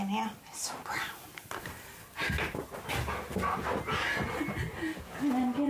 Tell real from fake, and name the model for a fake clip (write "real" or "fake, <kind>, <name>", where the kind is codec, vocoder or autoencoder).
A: real